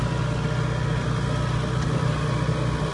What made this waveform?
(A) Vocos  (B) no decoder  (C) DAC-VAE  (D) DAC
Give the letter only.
B